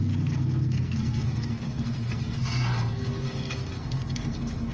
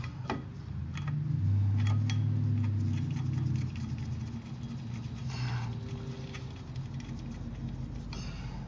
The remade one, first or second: first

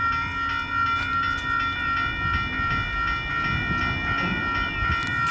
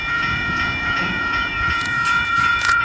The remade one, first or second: second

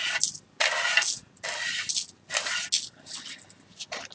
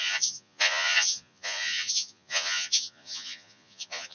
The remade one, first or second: second